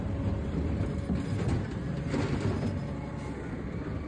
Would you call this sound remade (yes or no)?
no